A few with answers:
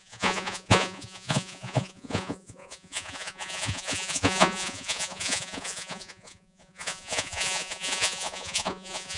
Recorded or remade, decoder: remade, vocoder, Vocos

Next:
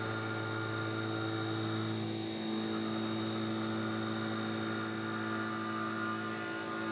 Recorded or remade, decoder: recorded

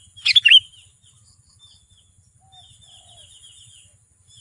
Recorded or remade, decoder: recorded